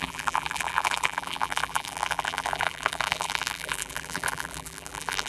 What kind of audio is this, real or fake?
fake